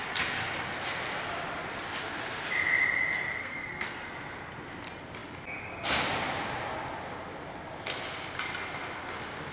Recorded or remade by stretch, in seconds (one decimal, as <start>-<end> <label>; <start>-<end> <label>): 0.0-3.4 recorded; 3.4-4.0 remade; 4.0-9.5 recorded